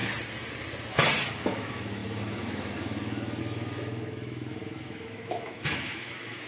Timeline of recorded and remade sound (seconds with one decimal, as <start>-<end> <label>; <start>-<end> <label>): 0.0-1.3 recorded; 1.3-6.5 remade